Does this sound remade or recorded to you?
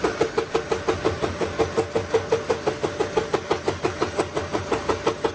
recorded